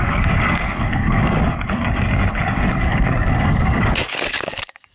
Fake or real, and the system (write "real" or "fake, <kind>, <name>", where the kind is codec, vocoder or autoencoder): fake, codec, DAC